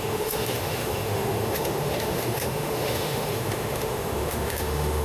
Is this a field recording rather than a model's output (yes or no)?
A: no